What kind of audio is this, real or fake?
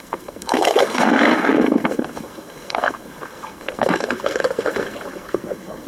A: fake